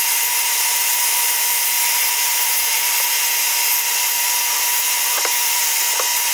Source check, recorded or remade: recorded